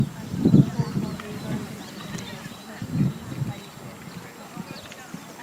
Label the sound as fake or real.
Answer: real